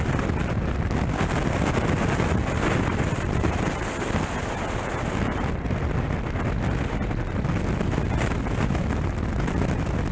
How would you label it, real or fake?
real